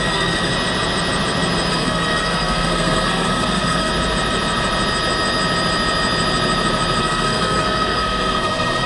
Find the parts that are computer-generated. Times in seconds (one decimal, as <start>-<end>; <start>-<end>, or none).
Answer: 0.0-0.5; 1.7-3.9; 7.0-8.9